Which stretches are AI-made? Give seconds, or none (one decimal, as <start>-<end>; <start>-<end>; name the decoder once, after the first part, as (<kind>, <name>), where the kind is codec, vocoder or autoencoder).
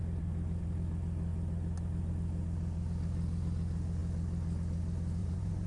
5.2-5.7 (vocoder, Vocos)